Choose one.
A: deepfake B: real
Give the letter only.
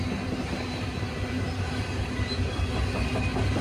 B